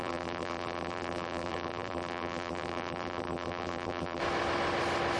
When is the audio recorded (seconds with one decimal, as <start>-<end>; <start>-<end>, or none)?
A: 4.2-5.2